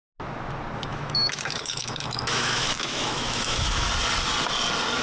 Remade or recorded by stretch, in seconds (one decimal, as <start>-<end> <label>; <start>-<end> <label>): 0.0-0.9 recorded; 0.9-3.9 remade; 3.9-5.0 recorded